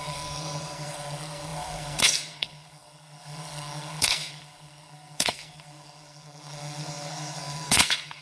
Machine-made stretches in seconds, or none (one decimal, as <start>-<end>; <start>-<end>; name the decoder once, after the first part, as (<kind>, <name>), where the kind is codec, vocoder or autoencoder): 0.0-8.2 (codec, SNAC)